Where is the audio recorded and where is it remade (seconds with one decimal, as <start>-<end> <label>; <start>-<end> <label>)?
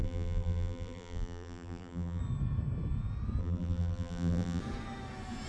0.0-2.2 remade; 2.2-3.4 recorded; 3.4-4.6 remade; 4.6-5.5 recorded